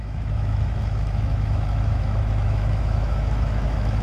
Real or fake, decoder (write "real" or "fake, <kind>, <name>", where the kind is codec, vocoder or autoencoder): fake, autoencoder, DAC-VAE